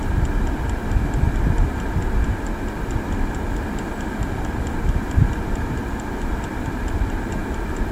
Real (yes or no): yes